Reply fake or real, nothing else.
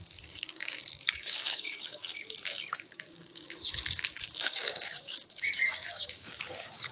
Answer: fake